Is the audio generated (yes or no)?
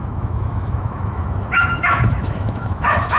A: yes